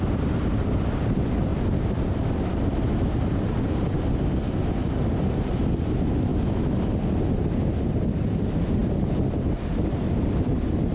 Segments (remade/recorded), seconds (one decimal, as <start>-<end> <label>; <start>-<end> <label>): 0.0-1.5 remade; 1.5-2.1 recorded; 2.1-6.3 remade; 6.3-7.9 recorded; 7.9-10.9 remade